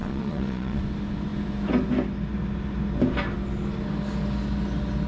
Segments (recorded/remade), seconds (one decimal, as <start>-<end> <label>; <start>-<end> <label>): 0.0-0.8 remade; 0.8-5.1 recorded